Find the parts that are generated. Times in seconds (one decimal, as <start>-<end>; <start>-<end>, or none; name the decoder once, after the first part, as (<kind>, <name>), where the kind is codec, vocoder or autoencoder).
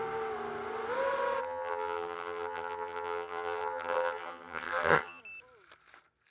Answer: 1.4-5.2 (vocoder, HiFi-GAN)